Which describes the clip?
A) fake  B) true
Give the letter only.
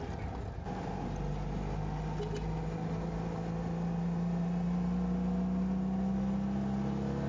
B